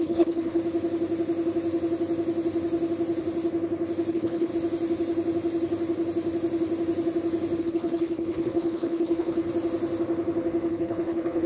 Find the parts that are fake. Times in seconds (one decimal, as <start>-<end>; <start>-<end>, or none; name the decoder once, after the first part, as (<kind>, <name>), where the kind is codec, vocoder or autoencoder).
0.0-0.6 (codec, HILCodec); 4.1-4.5; 7.6-9.5; 10.7-11.5